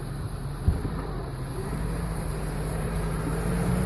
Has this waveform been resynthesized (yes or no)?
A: yes